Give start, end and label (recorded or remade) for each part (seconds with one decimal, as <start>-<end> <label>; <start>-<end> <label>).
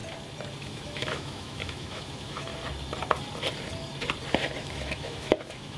0.0-0.6 recorded; 0.6-2.5 remade; 2.5-4.6 recorded; 4.6-5.8 remade